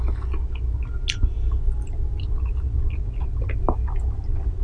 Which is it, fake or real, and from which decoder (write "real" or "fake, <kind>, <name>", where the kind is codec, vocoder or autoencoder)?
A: real